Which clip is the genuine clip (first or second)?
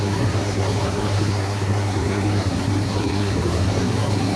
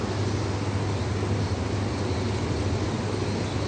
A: second